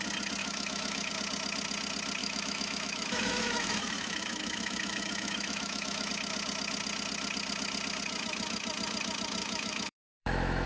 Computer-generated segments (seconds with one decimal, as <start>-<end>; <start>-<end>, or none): 0.4-1.1; 2.2-6.1; 9.4-10.7